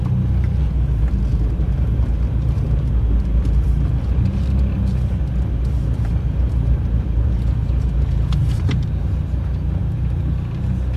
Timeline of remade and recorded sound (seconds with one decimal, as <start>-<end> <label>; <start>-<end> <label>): 0.0-1.3 recorded; 1.3-2.9 remade; 2.9-8.4 recorded; 8.4-9.2 remade; 9.2-9.8 recorded; 9.8-11.0 remade

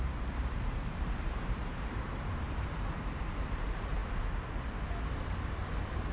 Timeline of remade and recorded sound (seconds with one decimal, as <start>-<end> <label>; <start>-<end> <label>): 0.0-4.0 remade; 4.0-6.1 recorded

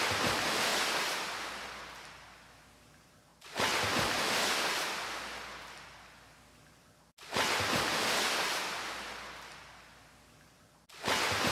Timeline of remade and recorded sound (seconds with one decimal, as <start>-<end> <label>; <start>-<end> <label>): 0.0-11.5 recorded

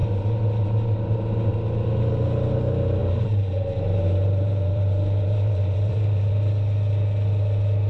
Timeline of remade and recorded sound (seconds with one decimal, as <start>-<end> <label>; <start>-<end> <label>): 0.0-1.5 remade; 1.5-3.0 recorded; 3.0-6.3 remade; 6.3-7.9 recorded

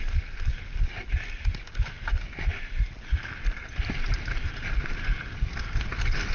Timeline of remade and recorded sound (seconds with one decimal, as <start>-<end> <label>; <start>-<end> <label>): 0.0-2.3 recorded; 2.3-6.3 remade